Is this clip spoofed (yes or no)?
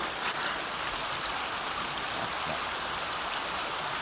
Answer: no